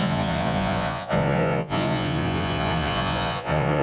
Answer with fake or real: fake